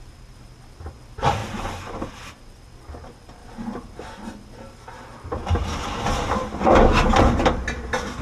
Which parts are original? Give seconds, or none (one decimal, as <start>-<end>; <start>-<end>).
0.0-8.2